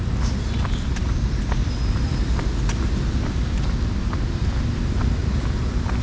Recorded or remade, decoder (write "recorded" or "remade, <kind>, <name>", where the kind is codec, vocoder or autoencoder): recorded